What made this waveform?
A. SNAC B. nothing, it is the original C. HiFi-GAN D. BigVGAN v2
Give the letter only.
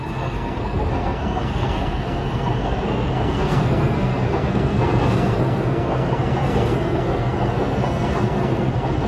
A